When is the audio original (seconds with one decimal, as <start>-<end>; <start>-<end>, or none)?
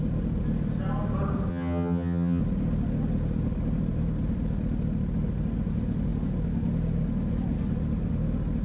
0.0-1.5; 2.4-8.6